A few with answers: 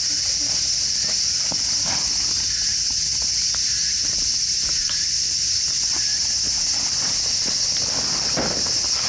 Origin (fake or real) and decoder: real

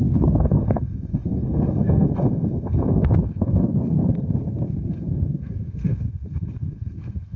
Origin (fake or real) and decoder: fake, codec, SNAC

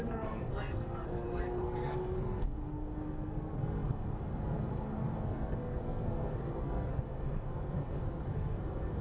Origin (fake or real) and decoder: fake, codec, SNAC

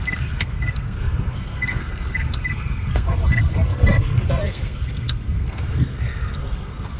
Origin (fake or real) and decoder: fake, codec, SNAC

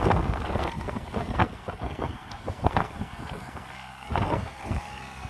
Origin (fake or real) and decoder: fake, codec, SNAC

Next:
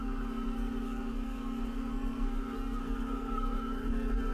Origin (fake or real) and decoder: fake, codec, SNAC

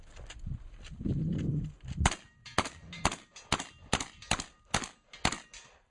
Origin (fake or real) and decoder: real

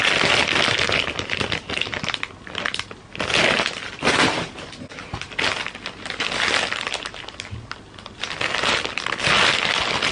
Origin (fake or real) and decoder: real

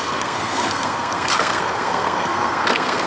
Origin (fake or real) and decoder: fake, codec, SNAC